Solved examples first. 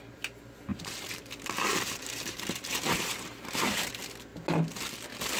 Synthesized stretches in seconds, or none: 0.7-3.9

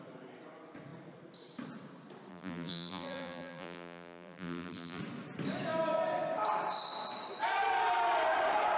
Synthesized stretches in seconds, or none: 2.3-5.0

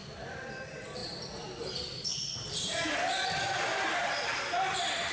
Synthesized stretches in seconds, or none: 0.5-5.1